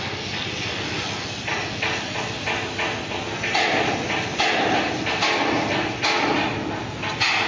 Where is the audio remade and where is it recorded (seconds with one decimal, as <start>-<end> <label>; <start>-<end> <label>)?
0.0-7.5 recorded